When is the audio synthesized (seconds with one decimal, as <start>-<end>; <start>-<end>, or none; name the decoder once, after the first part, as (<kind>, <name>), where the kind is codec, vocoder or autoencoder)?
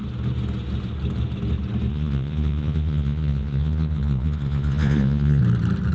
1.9-5.4 (vocoder, Vocos)